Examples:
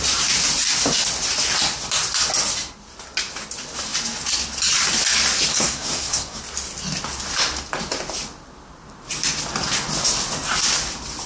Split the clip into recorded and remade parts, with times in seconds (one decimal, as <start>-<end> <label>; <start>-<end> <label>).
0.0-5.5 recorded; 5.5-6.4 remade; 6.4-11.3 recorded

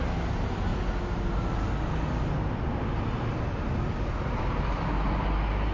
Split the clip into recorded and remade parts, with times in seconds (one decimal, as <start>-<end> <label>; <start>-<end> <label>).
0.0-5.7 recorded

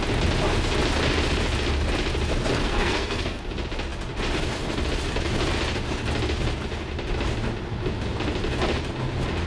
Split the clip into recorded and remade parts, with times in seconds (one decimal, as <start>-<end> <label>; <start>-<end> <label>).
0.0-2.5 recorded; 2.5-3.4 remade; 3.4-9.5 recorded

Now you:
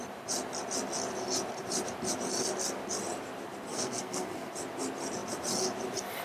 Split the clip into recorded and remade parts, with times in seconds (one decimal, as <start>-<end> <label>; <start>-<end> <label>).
0.0-3.7 recorded; 3.7-4.5 remade; 4.5-6.2 recorded

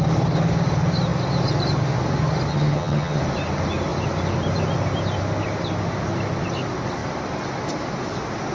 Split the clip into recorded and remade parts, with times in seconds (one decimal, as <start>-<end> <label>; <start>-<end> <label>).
0.0-2.5 recorded; 2.5-3.2 remade; 3.2-8.5 recorded

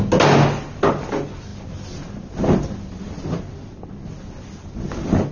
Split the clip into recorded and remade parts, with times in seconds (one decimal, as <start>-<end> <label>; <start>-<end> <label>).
0.0-5.3 recorded

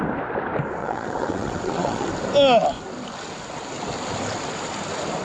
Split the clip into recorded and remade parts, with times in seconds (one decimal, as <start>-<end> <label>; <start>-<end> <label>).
0.0-0.8 recorded; 0.8-2.1 remade; 2.1-5.2 recorded

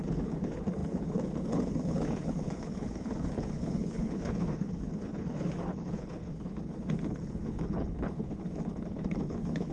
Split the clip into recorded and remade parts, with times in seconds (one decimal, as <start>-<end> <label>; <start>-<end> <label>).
0.0-9.7 remade